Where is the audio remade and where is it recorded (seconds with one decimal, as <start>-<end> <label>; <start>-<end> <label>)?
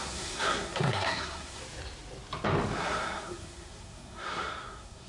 0.0-1.6 remade; 1.6-2.8 recorded; 2.8-5.1 remade